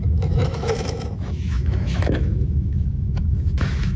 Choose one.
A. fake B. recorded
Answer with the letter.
A